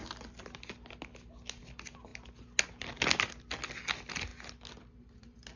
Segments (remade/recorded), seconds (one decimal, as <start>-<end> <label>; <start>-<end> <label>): 0.0-5.6 recorded